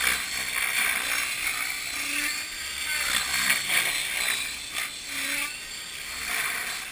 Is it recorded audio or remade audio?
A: recorded